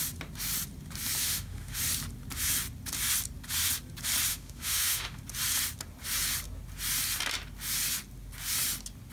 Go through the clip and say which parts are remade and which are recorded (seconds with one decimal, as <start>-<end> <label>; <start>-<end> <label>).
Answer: 0.0-1.2 recorded; 1.2-1.8 remade; 1.8-4.3 recorded; 4.3-5.2 remade; 5.2-9.1 recorded